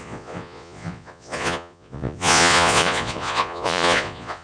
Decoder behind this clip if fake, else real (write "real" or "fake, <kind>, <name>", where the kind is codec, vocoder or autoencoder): fake, vocoder, Vocos